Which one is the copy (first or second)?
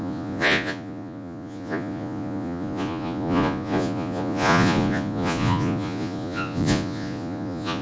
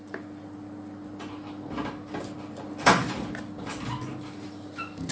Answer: first